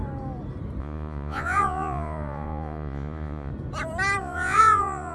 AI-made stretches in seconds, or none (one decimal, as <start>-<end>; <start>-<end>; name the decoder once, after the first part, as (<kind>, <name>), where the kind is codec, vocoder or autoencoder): 0.8-3.5 (vocoder, Vocos); 4.2-5.1